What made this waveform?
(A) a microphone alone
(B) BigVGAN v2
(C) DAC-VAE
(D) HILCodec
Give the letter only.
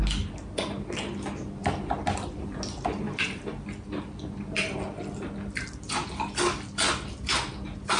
A